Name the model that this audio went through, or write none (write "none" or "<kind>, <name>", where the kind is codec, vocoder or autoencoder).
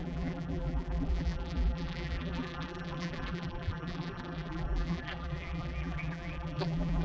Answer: vocoder, BigVGAN v2